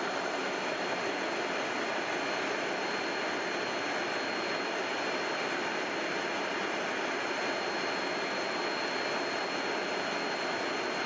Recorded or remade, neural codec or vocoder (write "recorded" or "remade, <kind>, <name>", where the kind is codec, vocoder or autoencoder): recorded